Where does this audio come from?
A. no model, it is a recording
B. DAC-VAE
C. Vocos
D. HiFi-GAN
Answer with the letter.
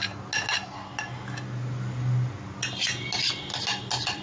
A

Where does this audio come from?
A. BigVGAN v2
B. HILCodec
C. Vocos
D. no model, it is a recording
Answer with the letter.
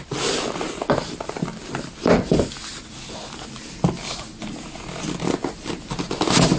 D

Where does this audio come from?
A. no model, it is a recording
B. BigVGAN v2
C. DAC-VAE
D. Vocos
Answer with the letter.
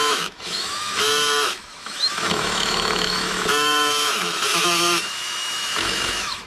C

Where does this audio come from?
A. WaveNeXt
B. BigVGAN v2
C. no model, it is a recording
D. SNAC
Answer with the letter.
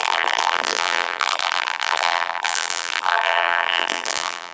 B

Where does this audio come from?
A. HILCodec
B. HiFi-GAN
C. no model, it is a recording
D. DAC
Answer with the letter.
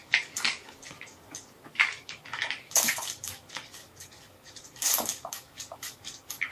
D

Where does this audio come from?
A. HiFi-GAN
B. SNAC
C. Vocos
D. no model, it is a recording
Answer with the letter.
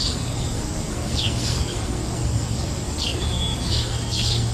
B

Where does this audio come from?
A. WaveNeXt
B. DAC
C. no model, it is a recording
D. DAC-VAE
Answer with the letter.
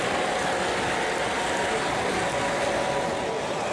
C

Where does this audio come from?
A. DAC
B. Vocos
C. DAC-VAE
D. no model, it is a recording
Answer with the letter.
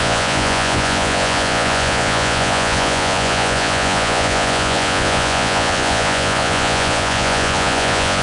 B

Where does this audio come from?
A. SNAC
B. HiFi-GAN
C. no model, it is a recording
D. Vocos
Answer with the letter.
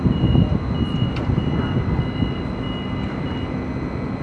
C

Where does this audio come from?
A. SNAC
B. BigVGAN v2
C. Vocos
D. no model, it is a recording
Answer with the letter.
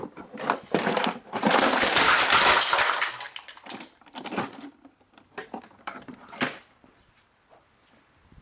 B